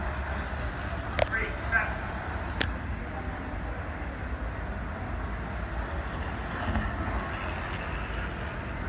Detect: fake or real real